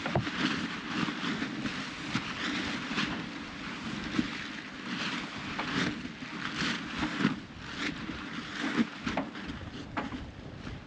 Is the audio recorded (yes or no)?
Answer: yes